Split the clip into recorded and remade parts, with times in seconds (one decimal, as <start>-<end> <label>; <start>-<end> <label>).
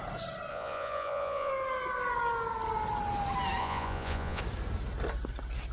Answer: 0.0-0.5 recorded; 0.5-1.5 remade; 1.5-3.6 recorded; 3.6-4.4 remade; 4.4-5.7 recorded